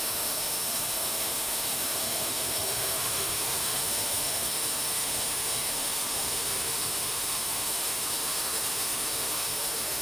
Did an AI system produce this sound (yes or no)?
yes